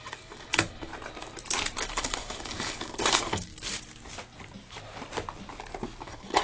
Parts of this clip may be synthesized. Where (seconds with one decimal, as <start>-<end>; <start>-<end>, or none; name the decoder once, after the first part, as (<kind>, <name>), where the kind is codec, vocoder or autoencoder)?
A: 0.0-0.9 (codec, DAC); 1.8-3.5; 6.0-6.4